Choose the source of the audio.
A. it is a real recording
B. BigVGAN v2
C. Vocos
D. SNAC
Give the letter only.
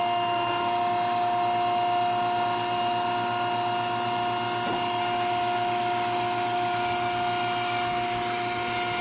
A